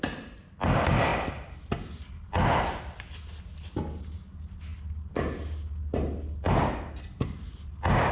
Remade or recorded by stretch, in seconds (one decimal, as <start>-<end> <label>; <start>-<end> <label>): 0.0-8.1 recorded